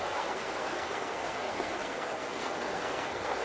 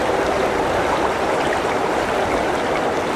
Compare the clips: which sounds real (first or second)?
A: second